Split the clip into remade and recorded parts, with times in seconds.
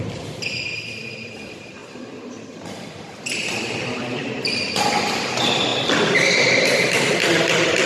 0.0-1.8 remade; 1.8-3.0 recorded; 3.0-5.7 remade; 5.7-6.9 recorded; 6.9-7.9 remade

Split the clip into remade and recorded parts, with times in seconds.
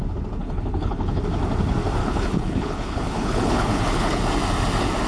0.0-0.4 recorded; 0.4-1.2 remade; 1.2-2.0 recorded; 2.0-4.2 remade; 4.2-5.1 recorded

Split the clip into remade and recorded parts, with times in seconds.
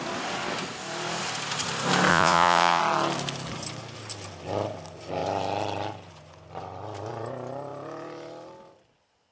0.0-2.1 recorded; 2.1-2.8 remade; 2.8-9.3 recorded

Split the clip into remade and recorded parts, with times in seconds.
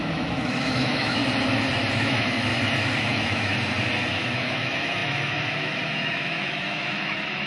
0.0-1.2 remade; 1.2-2.0 recorded; 2.0-2.5 remade; 2.5-3.0 recorded; 3.0-3.5 remade; 3.5-4.1 recorded; 4.1-7.5 remade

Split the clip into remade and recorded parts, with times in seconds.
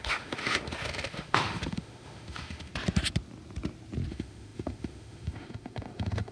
0.0-2.7 remade; 2.7-4.1 recorded; 4.1-6.3 remade